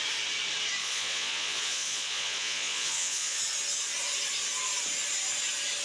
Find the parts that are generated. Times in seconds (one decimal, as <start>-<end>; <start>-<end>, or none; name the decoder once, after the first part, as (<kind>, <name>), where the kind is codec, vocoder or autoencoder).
0.8-3.4 (vocoder, Vocos)